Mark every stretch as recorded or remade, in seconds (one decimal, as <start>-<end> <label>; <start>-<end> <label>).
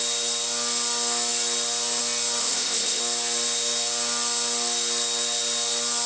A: 0.0-2.4 recorded; 2.4-3.0 remade; 3.0-6.1 recorded